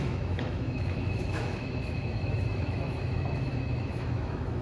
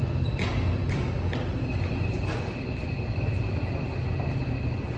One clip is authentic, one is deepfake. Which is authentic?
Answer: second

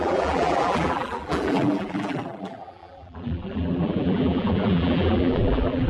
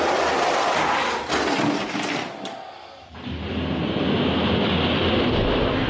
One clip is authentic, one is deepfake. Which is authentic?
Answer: second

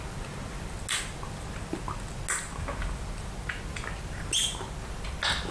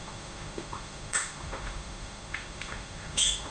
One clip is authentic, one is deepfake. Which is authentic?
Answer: first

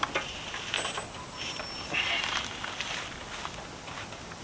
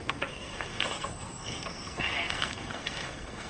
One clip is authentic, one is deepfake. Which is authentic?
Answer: first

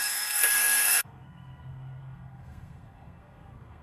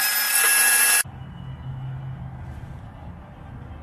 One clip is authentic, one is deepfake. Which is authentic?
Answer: second